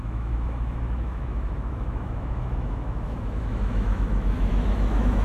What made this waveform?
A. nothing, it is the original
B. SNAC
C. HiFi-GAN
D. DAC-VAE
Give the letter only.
D